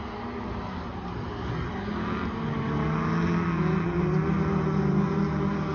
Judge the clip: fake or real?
real